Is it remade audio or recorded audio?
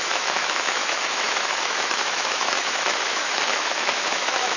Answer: remade